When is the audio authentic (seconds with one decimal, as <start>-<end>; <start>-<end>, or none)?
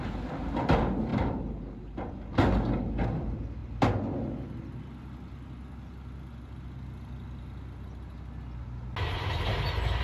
0.0-10.0